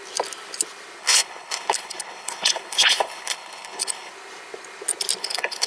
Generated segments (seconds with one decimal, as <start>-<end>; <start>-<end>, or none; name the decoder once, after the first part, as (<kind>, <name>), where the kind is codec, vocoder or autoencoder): 1.0-4.1 (codec, HILCodec); 5.2-5.7